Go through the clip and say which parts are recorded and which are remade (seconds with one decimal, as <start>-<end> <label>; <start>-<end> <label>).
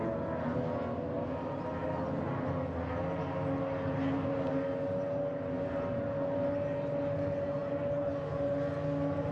0.0-9.3 recorded